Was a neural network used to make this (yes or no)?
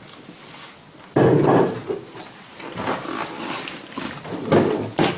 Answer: no